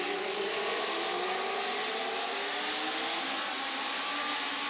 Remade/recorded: recorded